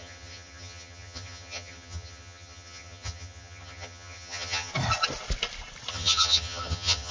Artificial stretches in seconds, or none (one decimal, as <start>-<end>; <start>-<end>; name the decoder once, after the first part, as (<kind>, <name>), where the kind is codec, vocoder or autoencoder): 0.0-4.7 (vocoder, HiFi-GAN); 5.9-7.1